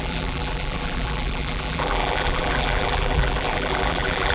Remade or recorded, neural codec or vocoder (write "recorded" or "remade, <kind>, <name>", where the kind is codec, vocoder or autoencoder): remade, vocoder, BigVGAN v2